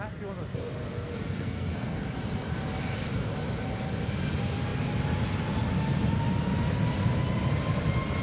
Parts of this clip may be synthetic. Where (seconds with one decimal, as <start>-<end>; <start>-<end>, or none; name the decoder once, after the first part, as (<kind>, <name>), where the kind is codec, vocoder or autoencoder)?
0.9-2.0 (codec, SNAC)